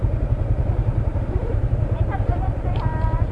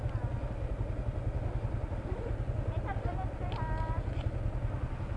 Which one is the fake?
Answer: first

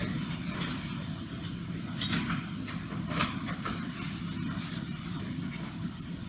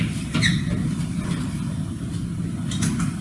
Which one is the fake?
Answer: second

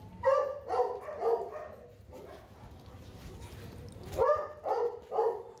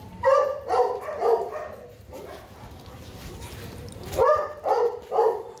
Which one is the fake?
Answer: second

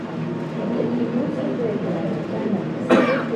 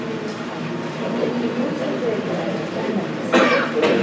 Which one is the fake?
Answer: second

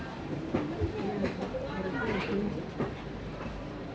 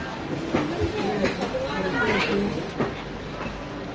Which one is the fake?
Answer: first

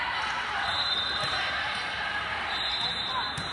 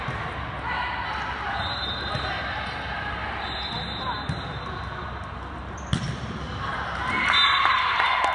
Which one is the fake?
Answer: first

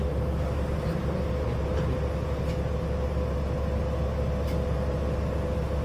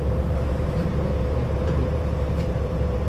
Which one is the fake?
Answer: second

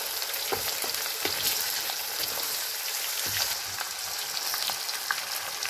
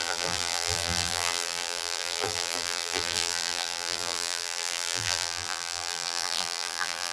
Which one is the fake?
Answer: second